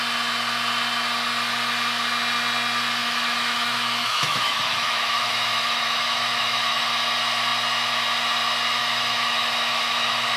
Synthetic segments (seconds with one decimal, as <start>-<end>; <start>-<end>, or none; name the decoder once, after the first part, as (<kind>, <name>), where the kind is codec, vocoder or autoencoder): 3.0-6.9 (autoencoder, DAC-VAE); 8.8-10.4

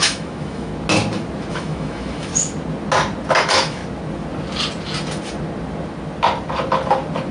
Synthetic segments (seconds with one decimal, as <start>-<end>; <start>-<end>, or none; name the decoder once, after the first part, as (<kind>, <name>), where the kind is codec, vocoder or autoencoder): 0.0-0.7 (autoencoder, DAC-VAE); 1.5-2.3; 3.4-3.8